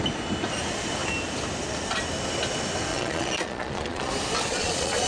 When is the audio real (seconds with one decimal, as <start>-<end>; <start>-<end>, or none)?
0.0-2.9; 4.1-4.5